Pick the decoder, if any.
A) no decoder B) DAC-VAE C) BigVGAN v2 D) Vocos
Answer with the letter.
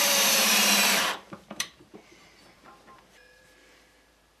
C